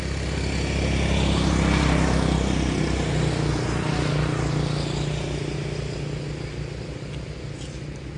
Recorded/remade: recorded